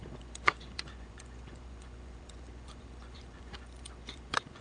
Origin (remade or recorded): remade